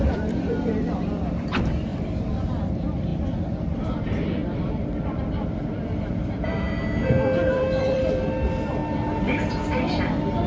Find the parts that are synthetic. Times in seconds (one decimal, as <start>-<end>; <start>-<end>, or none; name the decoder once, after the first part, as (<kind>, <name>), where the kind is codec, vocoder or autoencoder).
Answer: 0.0-3.1 (vocoder, BigVGAN v2); 3.8-8.8; 9.5-10.5